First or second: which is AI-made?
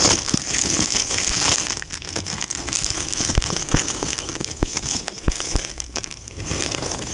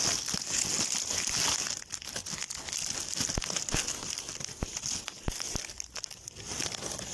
first